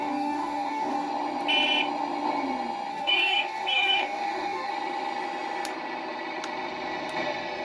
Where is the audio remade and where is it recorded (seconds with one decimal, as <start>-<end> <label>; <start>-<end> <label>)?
0.0-1.1 remade; 1.1-2.9 recorded; 2.9-4.7 remade; 4.7-7.6 recorded